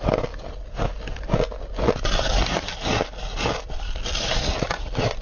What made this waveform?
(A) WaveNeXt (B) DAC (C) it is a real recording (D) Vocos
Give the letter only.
C